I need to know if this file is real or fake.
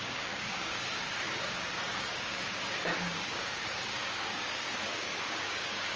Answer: fake